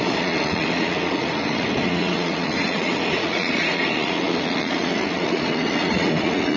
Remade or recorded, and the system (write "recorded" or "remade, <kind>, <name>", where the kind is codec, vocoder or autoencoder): remade, vocoder, Vocos